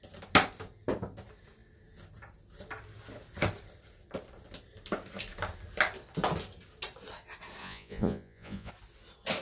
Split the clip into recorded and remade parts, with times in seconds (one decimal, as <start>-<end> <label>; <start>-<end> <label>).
0.0-7.6 recorded; 7.6-8.7 remade; 8.7-9.4 recorded